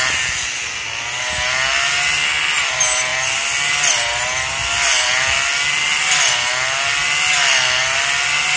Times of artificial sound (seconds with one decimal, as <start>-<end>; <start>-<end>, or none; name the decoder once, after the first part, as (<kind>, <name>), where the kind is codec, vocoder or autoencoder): 4.6-5.1 (vocoder, BigVGAN v2)